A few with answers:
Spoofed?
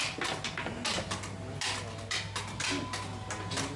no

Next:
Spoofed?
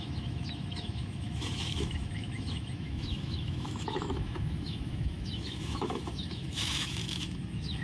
yes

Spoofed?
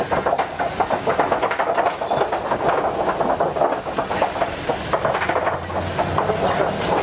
no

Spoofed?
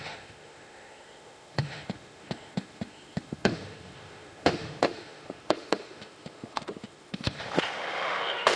yes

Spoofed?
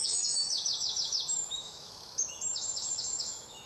yes